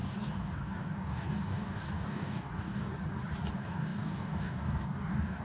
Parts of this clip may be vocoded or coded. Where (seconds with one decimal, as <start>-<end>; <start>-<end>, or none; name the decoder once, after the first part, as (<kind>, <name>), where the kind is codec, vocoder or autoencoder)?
0.0-2.9 (codec, DAC); 3.5-5.4